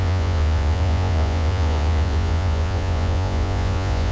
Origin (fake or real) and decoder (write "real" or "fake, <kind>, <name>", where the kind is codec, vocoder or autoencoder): fake, vocoder, Vocos